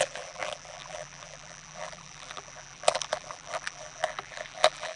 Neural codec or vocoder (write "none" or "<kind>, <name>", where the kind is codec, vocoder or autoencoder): vocoder, BigVGAN v2